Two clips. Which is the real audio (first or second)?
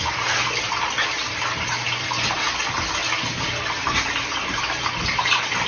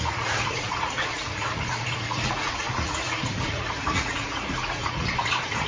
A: first